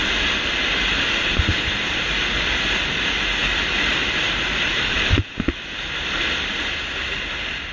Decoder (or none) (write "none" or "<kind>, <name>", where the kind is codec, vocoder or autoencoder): none